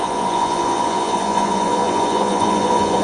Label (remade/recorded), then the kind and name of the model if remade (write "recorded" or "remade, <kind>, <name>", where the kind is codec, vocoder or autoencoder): remade, vocoder, Vocos